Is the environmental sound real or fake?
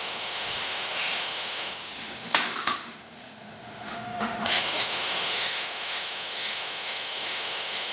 fake